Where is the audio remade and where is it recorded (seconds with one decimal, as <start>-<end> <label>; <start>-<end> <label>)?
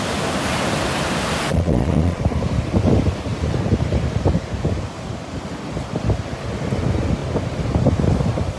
0.0-1.5 recorded; 1.5-2.2 remade; 2.2-8.6 recorded